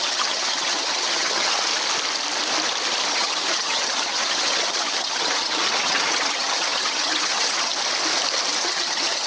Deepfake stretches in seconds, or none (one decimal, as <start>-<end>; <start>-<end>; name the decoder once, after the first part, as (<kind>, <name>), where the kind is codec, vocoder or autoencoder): 0.0-1.7 (vocoder, HiFi-GAN); 3.1-7.7; 8.6-9.3